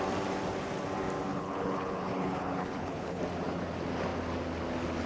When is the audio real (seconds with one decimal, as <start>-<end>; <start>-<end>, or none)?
0.0-1.3; 3.2-5.1